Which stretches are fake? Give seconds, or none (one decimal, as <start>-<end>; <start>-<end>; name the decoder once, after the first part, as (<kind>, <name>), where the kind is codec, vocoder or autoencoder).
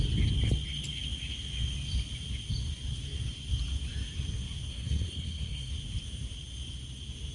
4.7-5.7 (codec, SNAC)